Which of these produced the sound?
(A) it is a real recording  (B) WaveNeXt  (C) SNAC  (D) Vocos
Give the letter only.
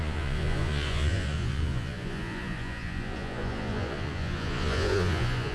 D